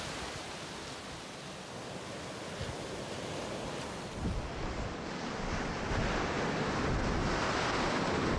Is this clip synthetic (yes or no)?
no